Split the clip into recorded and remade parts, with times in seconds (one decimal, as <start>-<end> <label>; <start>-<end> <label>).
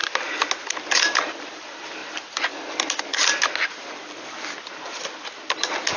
0.0-6.0 recorded